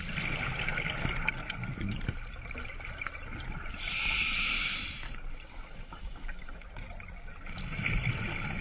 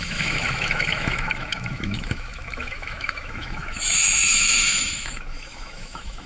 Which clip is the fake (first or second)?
second